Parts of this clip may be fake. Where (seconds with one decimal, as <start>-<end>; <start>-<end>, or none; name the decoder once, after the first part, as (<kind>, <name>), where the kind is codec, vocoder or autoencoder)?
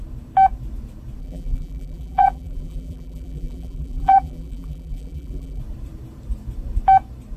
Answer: 1.2-5.6 (vocoder, BigVGAN v2)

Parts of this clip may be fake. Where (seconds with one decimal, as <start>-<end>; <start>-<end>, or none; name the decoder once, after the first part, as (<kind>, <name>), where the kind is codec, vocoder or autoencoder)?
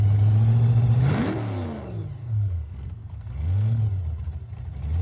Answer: 2.2-3.8 (codec, SNAC)